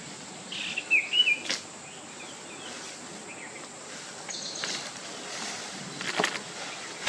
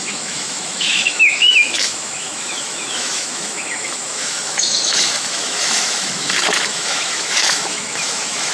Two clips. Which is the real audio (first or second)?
first